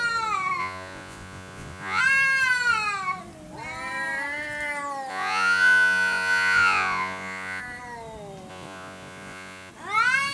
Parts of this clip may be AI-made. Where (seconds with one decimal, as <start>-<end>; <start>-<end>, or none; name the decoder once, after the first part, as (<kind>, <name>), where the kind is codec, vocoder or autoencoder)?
0.6-2.0 (vocoder, Vocos); 5.1-7.6; 8.5-9.7